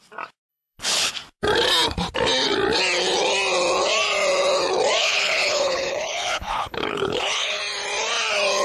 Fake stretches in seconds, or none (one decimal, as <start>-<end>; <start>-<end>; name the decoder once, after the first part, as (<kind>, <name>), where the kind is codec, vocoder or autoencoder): 0.5-1.1 (codec, HILCodec); 5.0-7.6